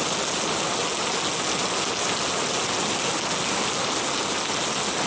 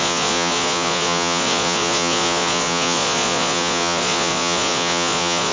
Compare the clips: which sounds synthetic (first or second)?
second